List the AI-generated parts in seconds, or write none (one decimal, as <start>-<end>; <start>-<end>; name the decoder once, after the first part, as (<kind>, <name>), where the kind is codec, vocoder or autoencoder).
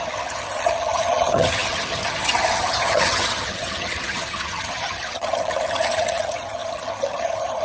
0.0-7.6 (vocoder, HiFi-GAN)